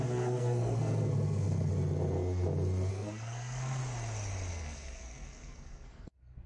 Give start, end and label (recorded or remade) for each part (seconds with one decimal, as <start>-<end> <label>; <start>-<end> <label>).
0.0-1.7 remade; 1.7-2.9 recorded; 2.9-3.8 remade; 3.8-4.5 recorded; 4.5-6.5 remade